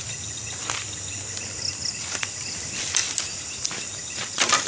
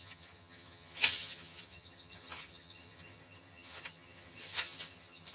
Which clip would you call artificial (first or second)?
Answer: second